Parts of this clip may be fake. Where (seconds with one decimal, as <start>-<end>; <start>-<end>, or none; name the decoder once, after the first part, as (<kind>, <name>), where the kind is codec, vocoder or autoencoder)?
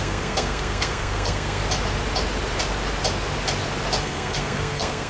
0.0-1.6 (codec, SNAC); 4.0-5.1